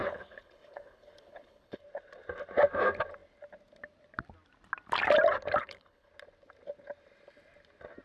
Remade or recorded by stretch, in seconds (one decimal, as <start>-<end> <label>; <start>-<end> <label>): 0.0-1.8 remade; 1.8-5.6 recorded; 5.6-6.1 remade; 6.1-8.0 recorded